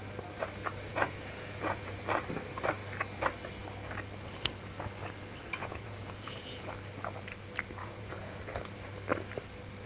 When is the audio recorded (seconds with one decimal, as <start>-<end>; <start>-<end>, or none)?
0.0-0.9; 2.0-5.6; 6.7-7.8; 8.4-9.9